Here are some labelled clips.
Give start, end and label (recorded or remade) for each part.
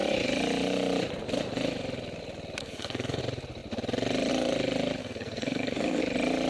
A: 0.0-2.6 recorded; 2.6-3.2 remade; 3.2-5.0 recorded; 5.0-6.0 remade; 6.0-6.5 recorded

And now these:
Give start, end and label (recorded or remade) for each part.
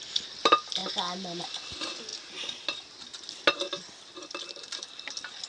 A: 0.0-5.5 recorded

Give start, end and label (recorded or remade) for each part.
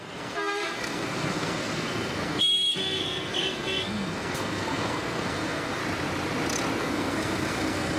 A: 0.0-5.8 remade; 5.8-6.8 recorded; 6.8-8.0 remade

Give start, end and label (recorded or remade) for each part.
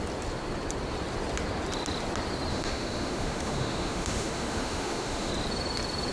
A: 0.0-2.5 recorded; 2.5-5.3 remade; 5.3-6.1 recorded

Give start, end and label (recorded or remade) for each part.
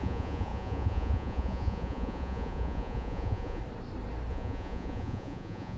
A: 0.0-3.6 remade; 3.6-4.3 recorded; 4.3-5.8 remade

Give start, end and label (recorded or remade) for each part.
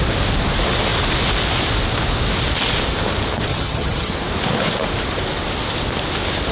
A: 0.0-3.5 recorded; 3.5-4.1 remade; 4.1-6.5 recorded